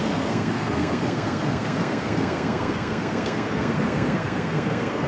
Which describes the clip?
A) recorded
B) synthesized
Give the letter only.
B